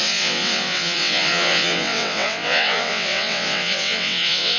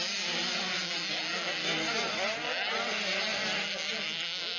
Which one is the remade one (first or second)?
first